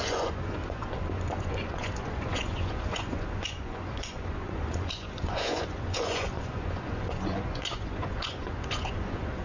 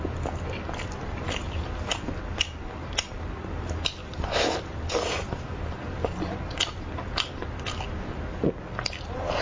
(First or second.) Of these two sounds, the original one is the second